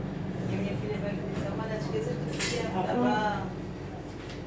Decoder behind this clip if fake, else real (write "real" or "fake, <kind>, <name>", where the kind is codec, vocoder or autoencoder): real